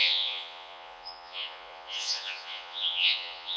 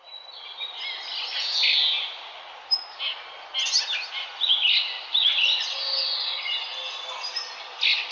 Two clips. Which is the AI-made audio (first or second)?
first